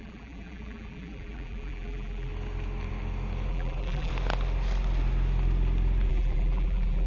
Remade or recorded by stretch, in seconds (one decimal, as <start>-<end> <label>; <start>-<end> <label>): 0.0-2.3 remade; 2.3-3.5 recorded; 3.5-4.1 remade; 4.1-6.1 recorded; 6.1-7.1 remade